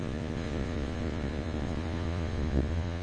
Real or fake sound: fake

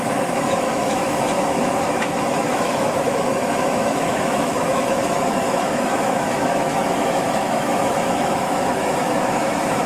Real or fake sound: fake